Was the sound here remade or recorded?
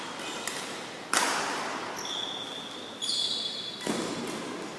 recorded